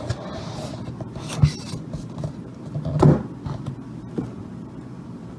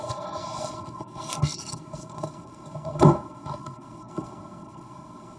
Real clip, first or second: first